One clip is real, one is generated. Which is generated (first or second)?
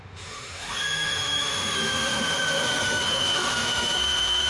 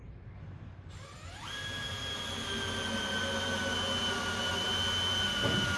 first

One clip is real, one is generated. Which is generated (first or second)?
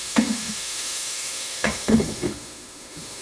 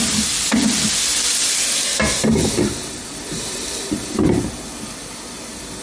first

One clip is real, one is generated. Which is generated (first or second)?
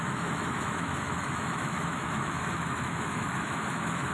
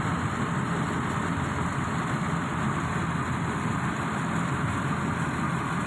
first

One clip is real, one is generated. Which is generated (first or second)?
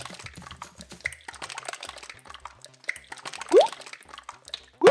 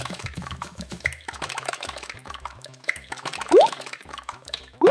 second